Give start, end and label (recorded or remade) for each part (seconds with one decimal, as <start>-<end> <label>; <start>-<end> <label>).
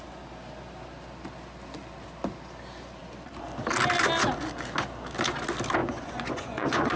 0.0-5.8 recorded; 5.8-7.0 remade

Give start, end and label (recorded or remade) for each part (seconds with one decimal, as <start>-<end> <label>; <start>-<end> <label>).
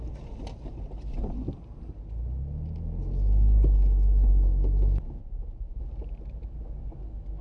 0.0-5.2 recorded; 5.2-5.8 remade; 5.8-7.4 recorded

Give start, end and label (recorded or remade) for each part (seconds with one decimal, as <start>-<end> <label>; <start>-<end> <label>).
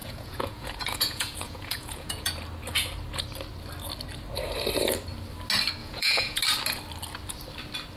0.0-2.3 remade; 2.3-5.8 recorded; 5.8-6.4 remade; 6.4-8.0 recorded